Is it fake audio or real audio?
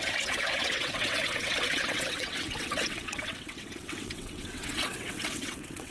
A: fake